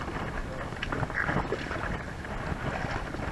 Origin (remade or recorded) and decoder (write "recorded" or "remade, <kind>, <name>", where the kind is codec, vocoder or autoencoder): recorded